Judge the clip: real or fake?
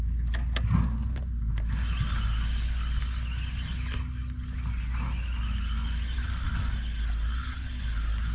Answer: real